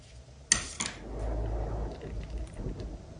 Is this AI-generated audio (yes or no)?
no